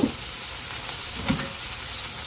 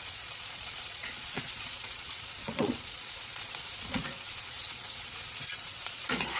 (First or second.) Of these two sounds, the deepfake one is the second